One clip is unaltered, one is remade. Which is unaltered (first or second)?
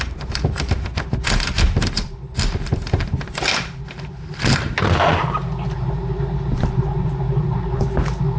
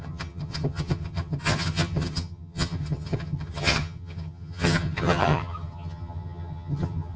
first